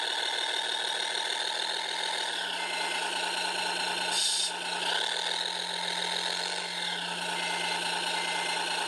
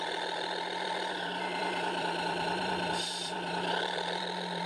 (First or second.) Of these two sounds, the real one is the first